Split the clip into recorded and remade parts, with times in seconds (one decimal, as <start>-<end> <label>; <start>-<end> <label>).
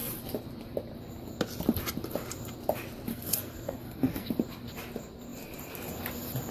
0.0-3.1 recorded; 3.1-4.3 remade; 4.3-6.5 recorded